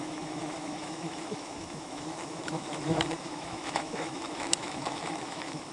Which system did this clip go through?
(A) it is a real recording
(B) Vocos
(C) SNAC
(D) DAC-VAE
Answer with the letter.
D